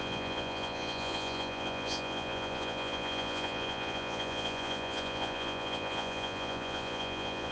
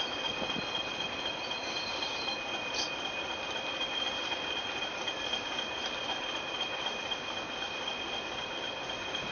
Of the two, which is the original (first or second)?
second